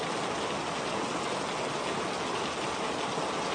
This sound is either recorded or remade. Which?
recorded